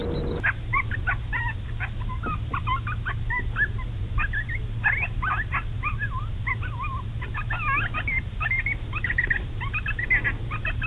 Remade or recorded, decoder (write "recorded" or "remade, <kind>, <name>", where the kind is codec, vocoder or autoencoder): recorded